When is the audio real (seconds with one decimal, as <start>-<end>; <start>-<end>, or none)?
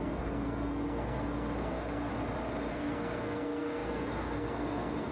2.1-2.7